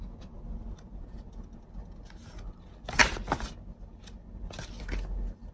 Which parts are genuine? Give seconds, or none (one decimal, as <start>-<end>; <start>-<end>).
0.0-5.5